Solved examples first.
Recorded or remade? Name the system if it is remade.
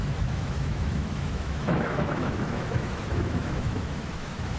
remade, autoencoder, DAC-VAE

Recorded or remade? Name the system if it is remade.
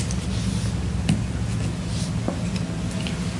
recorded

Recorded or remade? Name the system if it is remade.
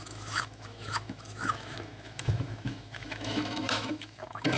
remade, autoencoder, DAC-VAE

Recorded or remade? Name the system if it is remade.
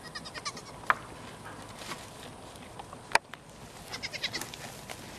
recorded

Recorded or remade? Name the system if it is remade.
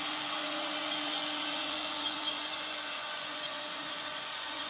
remade, vocoder, Vocos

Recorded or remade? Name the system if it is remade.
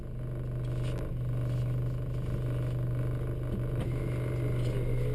recorded